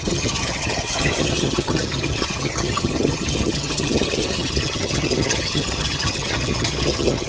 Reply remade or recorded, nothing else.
remade